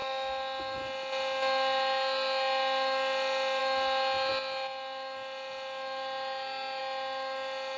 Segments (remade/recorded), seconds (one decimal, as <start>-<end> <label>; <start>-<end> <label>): 0.0-7.8 recorded